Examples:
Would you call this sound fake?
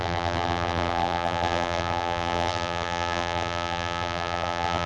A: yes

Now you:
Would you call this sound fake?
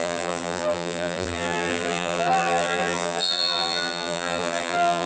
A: yes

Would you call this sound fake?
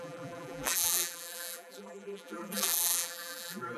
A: yes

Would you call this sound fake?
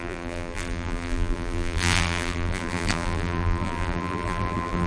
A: yes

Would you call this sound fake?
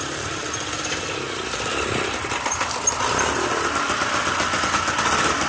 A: yes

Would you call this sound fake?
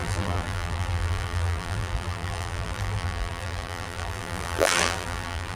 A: yes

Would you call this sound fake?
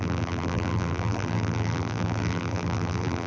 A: yes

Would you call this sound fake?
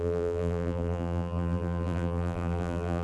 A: yes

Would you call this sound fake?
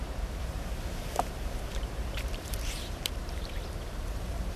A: yes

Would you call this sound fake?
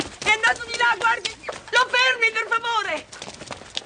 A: no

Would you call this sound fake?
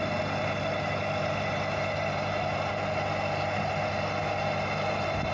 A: no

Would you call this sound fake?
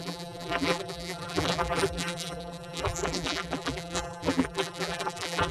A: yes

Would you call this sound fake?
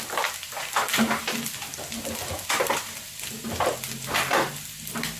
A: no